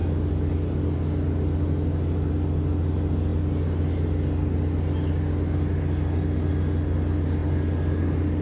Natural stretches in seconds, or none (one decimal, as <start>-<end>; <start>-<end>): 0.0-8.4